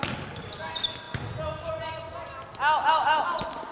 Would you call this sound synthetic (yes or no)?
no